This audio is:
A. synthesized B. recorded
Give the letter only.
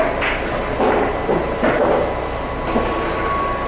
B